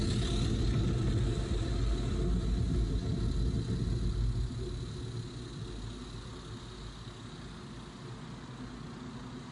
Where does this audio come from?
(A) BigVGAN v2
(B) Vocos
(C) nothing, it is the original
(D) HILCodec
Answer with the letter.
C